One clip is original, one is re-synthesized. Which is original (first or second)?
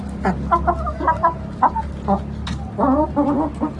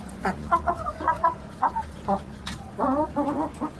first